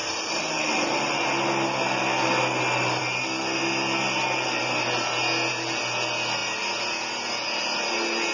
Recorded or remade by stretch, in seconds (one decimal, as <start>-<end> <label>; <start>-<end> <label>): 0.0-8.3 recorded